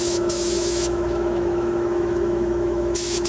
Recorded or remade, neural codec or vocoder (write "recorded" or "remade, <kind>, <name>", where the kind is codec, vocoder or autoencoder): remade, autoencoder, DAC-VAE